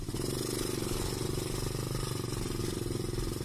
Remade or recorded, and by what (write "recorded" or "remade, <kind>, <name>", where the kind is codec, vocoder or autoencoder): recorded